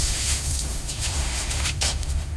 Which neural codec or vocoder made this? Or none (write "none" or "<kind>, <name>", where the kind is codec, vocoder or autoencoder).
autoencoder, DAC-VAE